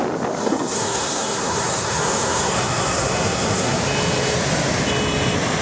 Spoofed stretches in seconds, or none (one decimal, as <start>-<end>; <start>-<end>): 0.4-3.8